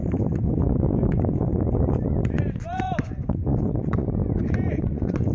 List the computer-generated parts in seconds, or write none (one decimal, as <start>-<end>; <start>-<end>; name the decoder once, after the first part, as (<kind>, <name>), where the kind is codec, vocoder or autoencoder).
0.0-5.3 (vocoder, Vocos)